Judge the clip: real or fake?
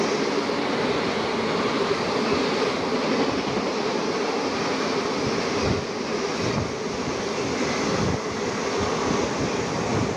real